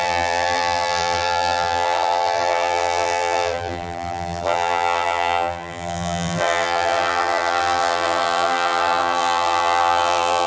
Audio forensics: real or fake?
fake